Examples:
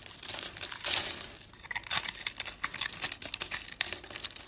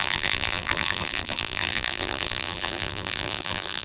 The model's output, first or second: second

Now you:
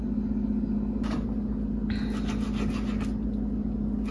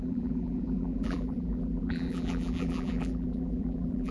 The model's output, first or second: second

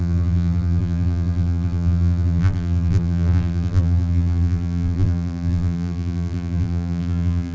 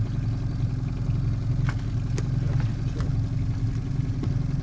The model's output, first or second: first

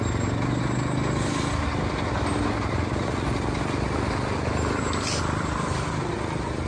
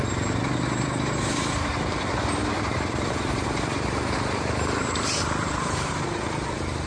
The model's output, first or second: second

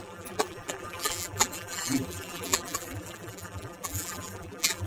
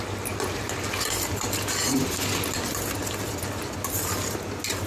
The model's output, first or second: first